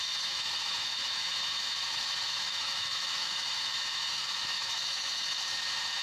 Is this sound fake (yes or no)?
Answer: yes